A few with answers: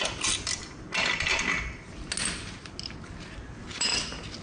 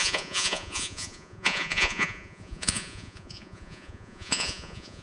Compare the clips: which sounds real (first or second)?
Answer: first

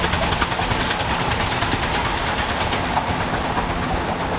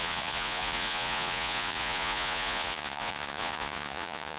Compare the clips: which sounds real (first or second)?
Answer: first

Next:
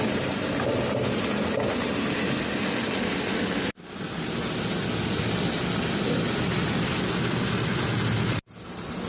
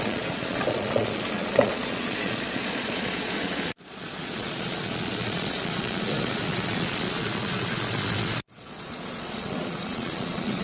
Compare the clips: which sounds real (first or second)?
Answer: first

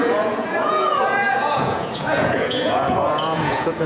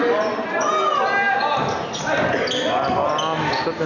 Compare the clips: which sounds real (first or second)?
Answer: second